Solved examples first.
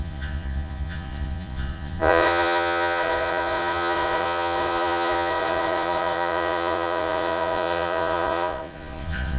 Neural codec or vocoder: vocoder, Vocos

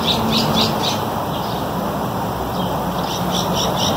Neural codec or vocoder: vocoder, BigVGAN v2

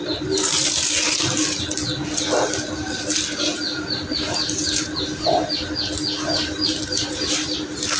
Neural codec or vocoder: none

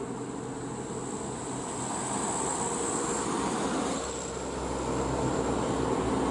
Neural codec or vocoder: none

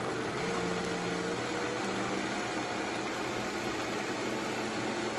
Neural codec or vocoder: none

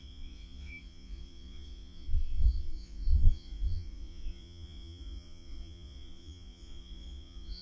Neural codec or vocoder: vocoder, Vocos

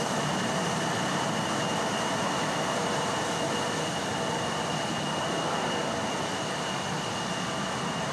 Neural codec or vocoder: none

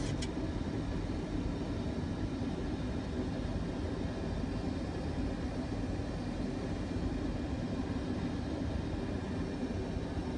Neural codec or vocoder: none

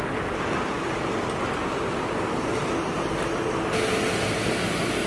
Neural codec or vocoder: none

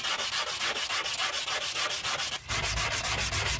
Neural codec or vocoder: none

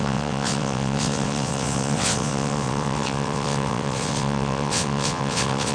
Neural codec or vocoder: vocoder, WaveNeXt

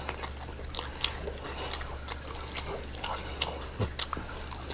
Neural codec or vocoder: none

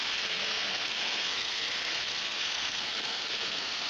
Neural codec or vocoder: codec, SNAC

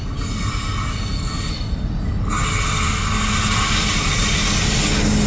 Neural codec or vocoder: none